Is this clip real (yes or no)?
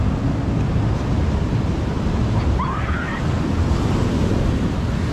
yes